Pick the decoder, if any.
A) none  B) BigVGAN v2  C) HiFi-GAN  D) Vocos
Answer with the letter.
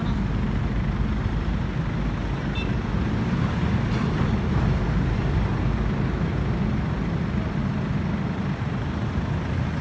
A